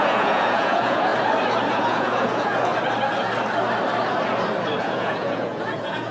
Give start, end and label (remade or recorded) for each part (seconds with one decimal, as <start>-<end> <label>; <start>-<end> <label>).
0.0-1.1 remade; 1.1-1.7 recorded; 1.7-2.7 remade; 2.7-4.8 recorded; 4.8-6.1 remade